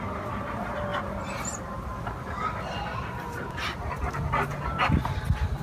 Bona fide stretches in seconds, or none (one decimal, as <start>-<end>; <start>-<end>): 0.0-5.6